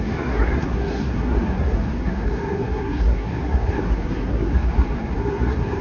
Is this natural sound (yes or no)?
no